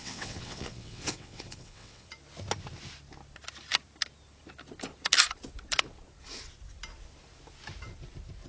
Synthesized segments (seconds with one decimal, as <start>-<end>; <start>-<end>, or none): 0.0-2.1